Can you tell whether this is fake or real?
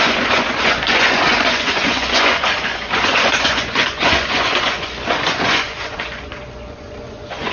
fake